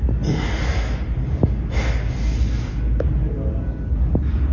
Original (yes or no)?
yes